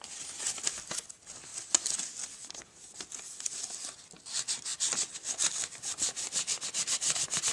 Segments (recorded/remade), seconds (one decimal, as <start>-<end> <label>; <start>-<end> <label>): 0.0-7.5 recorded